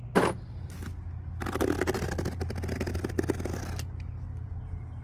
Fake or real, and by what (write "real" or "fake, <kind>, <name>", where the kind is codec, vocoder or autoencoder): real